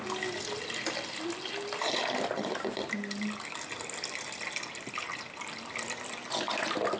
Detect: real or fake real